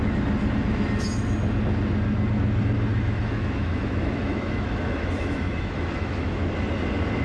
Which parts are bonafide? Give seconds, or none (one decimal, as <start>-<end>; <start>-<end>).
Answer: 0.0-2.9; 6.4-7.2